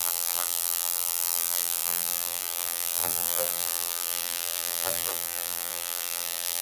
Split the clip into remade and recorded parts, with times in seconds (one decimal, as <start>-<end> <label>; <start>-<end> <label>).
0.0-6.6 remade